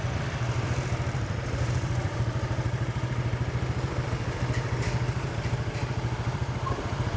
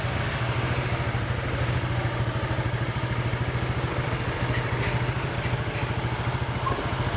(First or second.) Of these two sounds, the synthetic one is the first